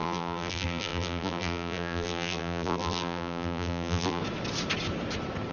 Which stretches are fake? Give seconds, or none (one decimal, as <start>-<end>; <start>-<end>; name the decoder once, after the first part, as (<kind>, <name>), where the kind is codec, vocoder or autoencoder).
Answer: 0.0-4.2 (vocoder, BigVGAN v2)